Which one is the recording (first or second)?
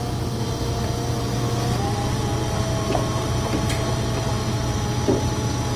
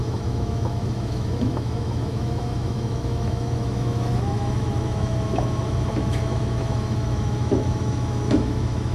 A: first